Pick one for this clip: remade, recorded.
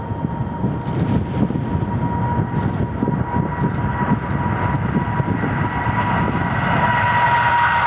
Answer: recorded